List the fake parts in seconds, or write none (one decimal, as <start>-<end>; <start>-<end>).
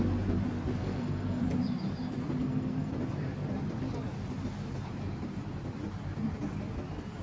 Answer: 0.8-1.4; 2.4-2.9